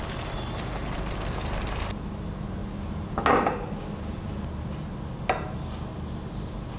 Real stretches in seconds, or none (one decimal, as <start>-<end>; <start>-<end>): 0.0-6.8